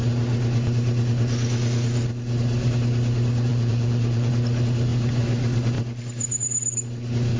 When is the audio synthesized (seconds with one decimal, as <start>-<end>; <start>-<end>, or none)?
3.5-4.3